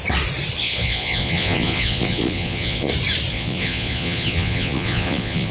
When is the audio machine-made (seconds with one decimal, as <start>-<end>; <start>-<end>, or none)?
0.6-2.9; 3.3-5.5